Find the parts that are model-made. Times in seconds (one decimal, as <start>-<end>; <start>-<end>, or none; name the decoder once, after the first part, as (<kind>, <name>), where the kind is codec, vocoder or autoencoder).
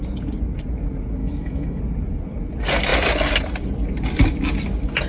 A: 1.2-1.8 (autoencoder, DAC-VAE)